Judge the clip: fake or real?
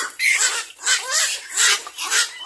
real